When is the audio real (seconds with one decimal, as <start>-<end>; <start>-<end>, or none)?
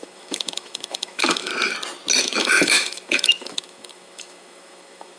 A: 1.5-2.2